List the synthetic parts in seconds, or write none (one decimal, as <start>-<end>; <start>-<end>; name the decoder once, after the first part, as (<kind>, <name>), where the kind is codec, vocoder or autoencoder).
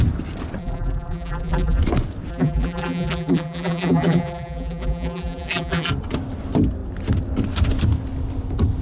0.6-1.8 (vocoder, BigVGAN v2); 2.3-5.9